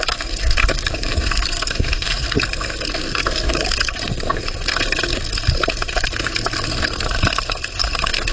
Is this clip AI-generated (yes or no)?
yes